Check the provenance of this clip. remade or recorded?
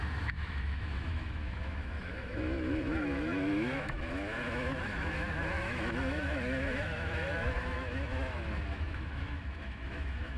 remade